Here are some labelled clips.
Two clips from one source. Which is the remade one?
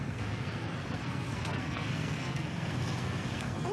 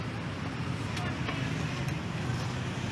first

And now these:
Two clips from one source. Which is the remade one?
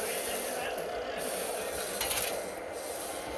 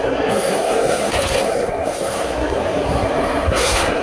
second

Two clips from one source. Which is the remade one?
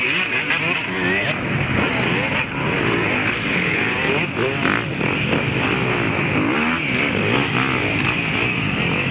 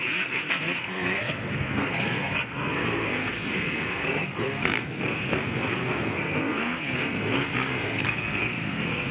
second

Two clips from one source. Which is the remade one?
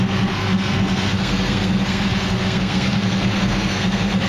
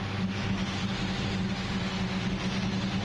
first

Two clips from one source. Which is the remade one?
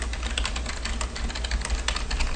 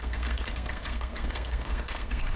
second